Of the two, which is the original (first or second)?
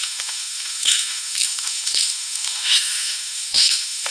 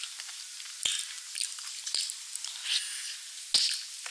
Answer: second